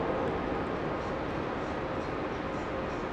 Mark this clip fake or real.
real